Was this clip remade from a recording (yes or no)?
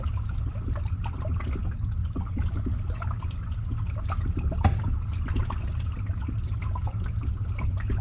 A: no